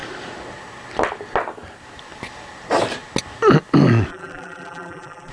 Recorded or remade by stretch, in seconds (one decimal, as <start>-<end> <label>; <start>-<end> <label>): 0.0-4.1 recorded; 4.1-5.3 remade